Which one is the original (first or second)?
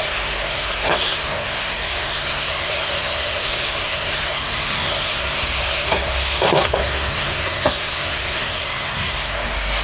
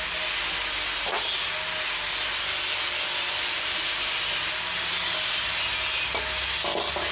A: second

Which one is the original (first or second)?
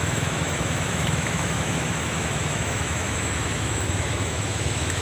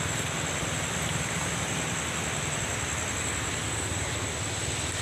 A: second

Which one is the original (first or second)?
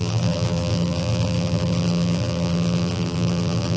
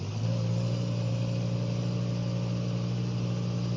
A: second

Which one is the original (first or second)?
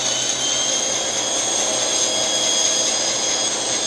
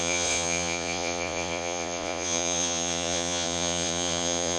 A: first